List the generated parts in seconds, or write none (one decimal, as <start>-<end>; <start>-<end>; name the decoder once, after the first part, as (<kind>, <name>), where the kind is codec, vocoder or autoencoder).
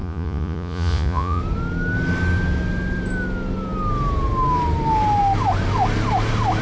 0.0-1.4 (vocoder, Vocos)